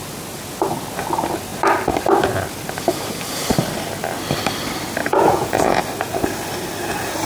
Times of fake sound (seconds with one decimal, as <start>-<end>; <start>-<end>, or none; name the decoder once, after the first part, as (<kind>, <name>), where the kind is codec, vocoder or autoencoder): 5.0-5.8 (vocoder, Vocos)